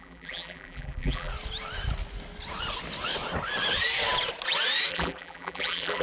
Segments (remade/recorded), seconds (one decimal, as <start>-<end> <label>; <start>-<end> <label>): 0.0-1.3 remade; 1.3-4.9 recorded; 4.9-6.0 remade